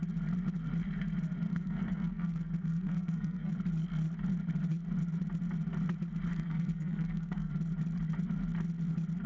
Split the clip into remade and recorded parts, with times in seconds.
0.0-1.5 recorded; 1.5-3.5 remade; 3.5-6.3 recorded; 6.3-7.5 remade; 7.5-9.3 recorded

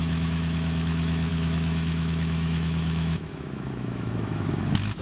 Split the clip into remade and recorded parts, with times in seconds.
0.0-5.0 remade

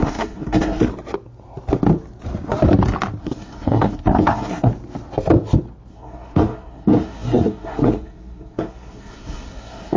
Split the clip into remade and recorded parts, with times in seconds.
0.0-0.9 remade; 0.9-3.2 recorded; 3.2-4.7 remade; 4.7-5.9 recorded; 5.9-10.0 remade

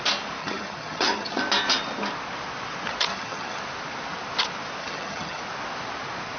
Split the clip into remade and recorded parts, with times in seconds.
0.0-0.4 recorded; 0.4-1.4 remade; 1.4-3.1 recorded; 3.1-3.6 remade; 3.6-4.8 recorded; 4.8-5.4 remade; 5.4-6.4 recorded

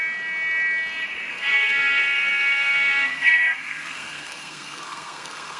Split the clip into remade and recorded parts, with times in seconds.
0.0-1.3 recorded; 1.3-5.6 remade